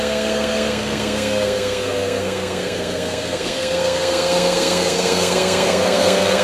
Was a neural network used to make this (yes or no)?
yes